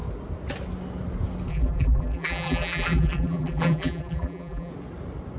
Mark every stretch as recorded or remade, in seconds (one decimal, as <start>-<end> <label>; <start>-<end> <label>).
0.0-1.5 recorded; 1.5-4.7 remade; 4.7-5.4 recorded